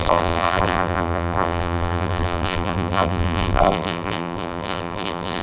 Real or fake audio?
fake